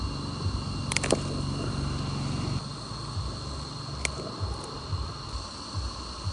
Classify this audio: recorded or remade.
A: recorded